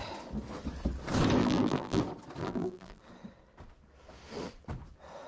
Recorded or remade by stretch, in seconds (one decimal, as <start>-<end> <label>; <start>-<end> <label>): 0.0-1.4 recorded; 1.4-2.0 remade; 2.0-2.4 recorded; 2.4-3.0 remade; 3.0-5.3 recorded